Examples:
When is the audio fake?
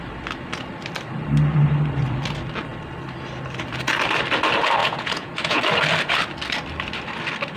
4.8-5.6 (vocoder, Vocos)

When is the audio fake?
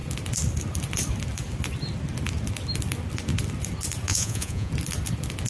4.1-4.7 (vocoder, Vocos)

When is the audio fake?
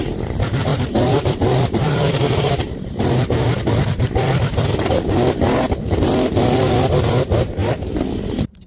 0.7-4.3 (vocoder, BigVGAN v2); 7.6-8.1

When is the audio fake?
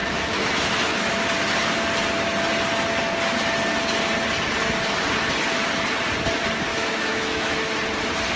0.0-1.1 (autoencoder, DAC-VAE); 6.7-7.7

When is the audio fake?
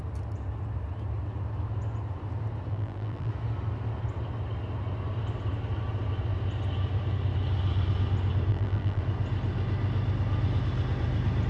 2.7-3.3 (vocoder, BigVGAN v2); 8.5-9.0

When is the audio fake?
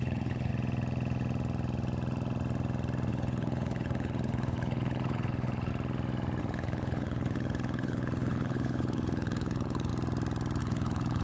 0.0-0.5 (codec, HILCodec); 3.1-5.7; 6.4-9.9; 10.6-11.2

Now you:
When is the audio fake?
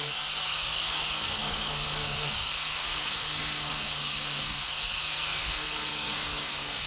0.0-6.9 (codec, SNAC)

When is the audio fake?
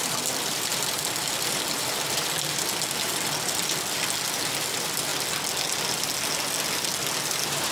0.0-5.1 (vocoder, BigVGAN v2); 7.2-7.7